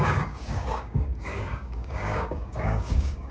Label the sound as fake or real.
fake